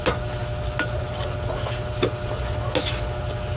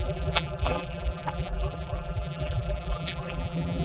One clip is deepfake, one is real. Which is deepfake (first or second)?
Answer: second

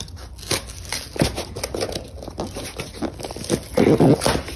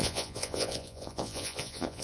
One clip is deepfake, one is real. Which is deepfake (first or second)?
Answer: second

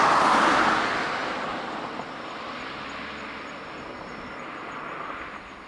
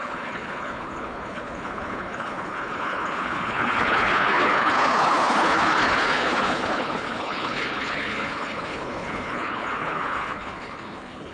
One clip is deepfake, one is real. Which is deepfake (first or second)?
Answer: second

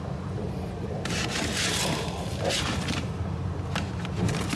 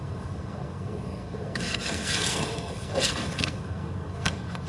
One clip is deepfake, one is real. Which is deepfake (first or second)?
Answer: second